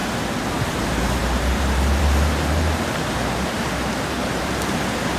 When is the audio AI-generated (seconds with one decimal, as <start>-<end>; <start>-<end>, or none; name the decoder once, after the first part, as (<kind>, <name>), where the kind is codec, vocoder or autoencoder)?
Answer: 0.7-5.2 (vocoder, BigVGAN v2)